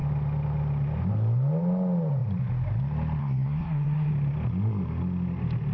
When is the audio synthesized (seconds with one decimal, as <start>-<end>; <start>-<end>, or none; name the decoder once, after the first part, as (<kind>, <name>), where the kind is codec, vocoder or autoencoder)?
3.2-4.1 (codec, SNAC)